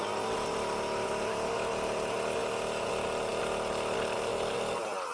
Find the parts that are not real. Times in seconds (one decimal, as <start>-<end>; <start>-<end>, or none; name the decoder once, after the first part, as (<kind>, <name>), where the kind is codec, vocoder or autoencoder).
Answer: none